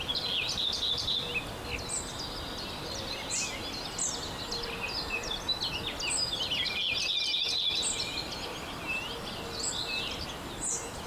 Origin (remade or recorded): recorded